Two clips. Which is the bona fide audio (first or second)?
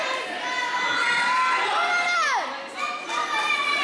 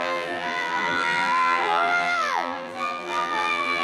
first